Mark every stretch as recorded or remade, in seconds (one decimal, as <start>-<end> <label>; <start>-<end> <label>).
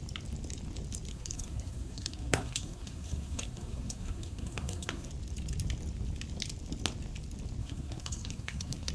0.0-1.1 recorded; 1.1-5.1 remade; 5.1-7.6 recorded; 7.6-8.9 remade